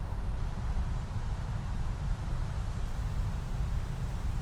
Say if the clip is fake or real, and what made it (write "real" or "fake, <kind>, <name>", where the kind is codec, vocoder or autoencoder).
fake, vocoder, BigVGAN v2